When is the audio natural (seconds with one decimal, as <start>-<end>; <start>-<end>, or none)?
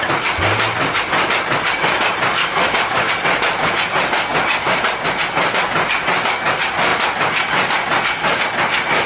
0.0-2.4; 3.1-9.1